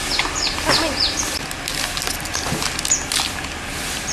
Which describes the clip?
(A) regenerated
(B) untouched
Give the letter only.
B